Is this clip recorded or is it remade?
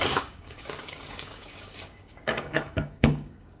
remade